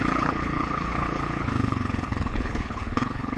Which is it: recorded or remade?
remade